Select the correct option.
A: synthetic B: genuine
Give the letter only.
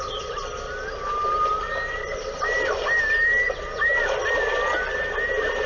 B